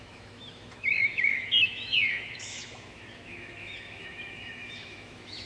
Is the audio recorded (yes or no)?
no